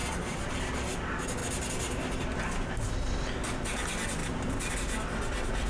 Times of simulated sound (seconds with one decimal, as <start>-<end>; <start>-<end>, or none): 0.0-0.6; 1.4-2.7; 4.2-4.7

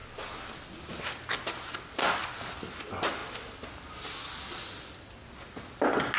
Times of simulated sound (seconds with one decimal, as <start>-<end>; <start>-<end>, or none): none

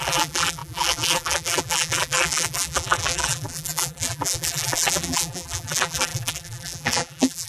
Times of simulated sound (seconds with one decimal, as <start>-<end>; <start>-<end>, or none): 0.0-7.5

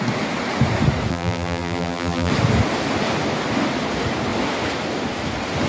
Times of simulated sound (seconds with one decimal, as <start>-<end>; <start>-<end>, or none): 1.1-2.3

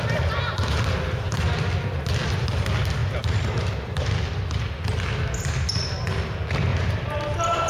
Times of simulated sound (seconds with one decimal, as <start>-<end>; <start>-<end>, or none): 3.0-4.1; 6.7-7.2

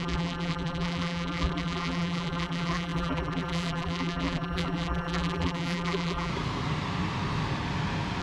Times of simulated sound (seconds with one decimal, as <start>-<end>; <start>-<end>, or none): 0.0-6.3

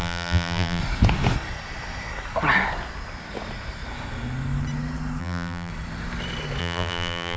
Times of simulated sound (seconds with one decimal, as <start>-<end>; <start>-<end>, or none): 0.0-0.8; 5.2-5.7; 6.6-7.4

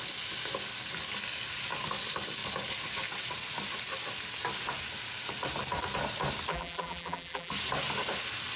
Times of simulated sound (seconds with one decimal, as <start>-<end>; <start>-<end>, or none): 6.5-7.5